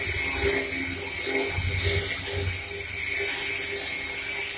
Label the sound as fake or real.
real